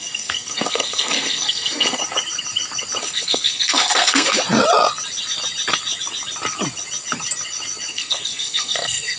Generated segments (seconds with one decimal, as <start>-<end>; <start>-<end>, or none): 0.0-2.0; 3.0-4.4; 7.9-9.2